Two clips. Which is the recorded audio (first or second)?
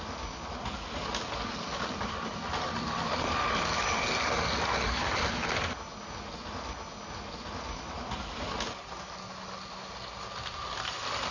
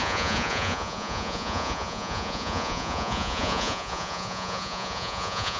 first